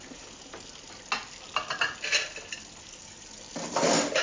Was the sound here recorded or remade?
recorded